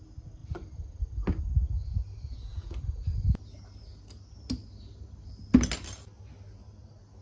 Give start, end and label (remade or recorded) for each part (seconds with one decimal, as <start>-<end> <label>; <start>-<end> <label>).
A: 0.0-7.2 recorded